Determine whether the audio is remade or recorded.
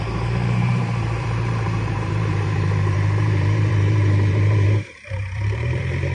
remade